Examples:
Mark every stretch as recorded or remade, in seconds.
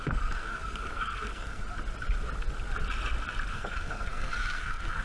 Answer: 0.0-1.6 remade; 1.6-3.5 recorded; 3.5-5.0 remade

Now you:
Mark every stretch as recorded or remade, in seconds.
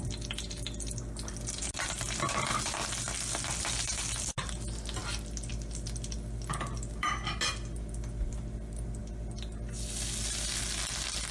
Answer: 0.0-11.3 recorded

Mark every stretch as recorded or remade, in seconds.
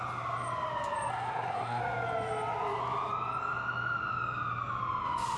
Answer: 0.0-1.1 recorded; 1.1-1.8 remade; 1.8-5.4 recorded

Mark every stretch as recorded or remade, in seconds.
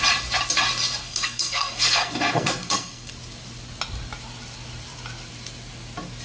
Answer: 0.0-1.0 recorded; 1.0-3.1 remade; 3.1-6.2 recorded